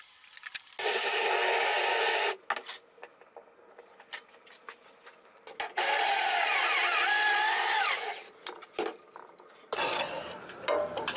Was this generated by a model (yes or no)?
no